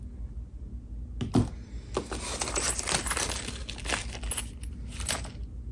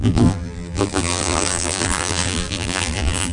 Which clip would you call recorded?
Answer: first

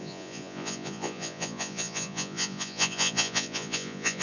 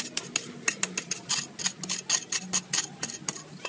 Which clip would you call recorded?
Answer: second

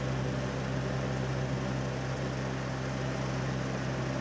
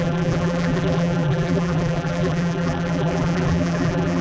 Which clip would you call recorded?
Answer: first